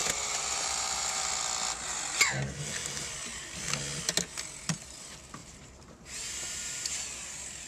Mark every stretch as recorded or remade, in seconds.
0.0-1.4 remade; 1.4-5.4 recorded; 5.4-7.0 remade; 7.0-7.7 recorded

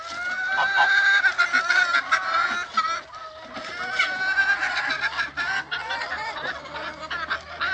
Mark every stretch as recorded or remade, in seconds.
0.0-7.7 recorded

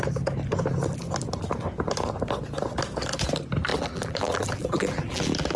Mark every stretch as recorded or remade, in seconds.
0.0-3.7 recorded; 3.7-5.6 remade

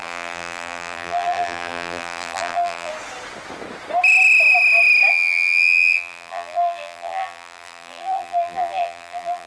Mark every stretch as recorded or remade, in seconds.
0.0-2.9 remade; 2.9-5.1 recorded; 5.1-9.5 remade

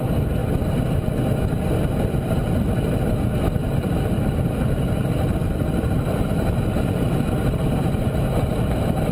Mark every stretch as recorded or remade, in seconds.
0.0-3.6 recorded; 3.6-9.1 remade

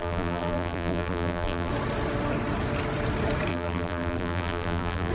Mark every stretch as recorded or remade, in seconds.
0.0-1.7 remade; 1.7-3.5 recorded; 3.5-5.1 remade

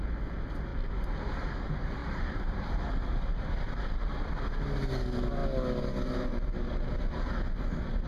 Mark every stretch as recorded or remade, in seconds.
0.0-0.7 recorded; 0.7-1.6 remade; 1.6-2.0 recorded; 2.0-4.3 remade; 4.3-8.1 recorded

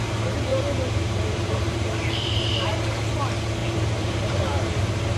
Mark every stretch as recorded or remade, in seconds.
0.0-0.5 recorded; 0.5-2.4 remade; 2.4-3.6 recorded; 3.6-4.8 remade; 4.8-5.2 recorded